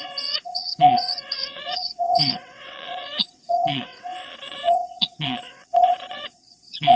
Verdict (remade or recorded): remade